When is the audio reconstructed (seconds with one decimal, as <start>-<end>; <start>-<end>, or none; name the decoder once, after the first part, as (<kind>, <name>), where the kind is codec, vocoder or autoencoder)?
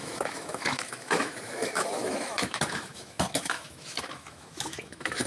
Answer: 0.0-5.3 (autoencoder, DAC-VAE)